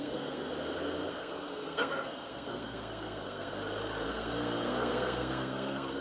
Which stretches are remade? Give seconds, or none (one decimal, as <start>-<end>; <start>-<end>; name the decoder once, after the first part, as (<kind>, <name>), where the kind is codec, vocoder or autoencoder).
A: 0.0-0.5 (codec, SNAC); 1.1-3.6; 4.1-6.0